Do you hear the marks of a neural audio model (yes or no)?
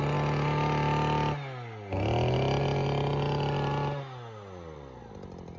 no